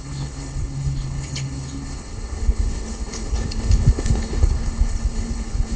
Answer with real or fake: fake